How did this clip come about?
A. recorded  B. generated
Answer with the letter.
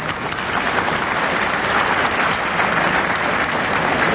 A